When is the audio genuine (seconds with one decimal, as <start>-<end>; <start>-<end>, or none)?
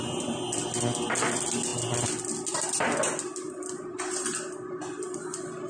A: 0.0-5.7